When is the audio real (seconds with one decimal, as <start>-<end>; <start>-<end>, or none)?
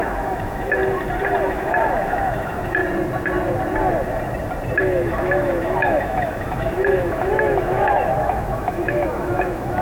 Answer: 0.8-1.5; 2.8-4.8